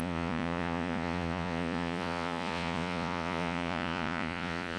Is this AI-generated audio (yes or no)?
yes